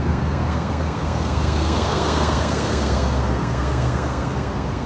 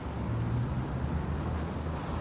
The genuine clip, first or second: second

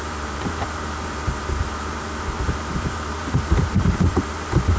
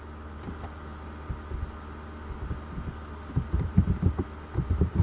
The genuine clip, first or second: second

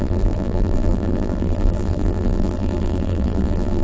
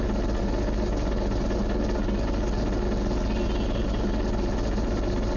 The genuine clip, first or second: second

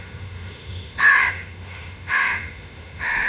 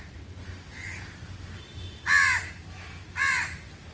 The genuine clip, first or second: second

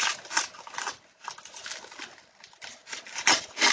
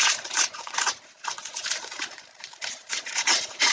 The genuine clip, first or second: first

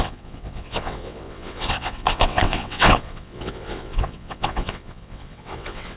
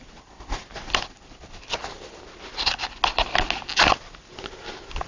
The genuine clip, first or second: second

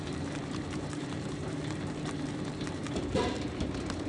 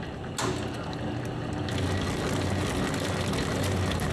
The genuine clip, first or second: second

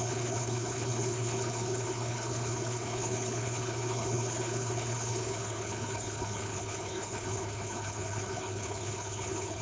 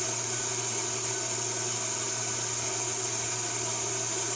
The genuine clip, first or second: second